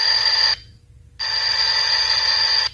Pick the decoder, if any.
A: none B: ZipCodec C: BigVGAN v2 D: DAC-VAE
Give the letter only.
A